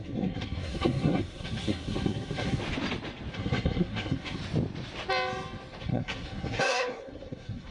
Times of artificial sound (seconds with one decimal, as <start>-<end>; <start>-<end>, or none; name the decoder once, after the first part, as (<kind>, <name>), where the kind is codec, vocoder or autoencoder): 0.0-2.6 (codec, SNAC); 3.3-4.4; 5.8-7.7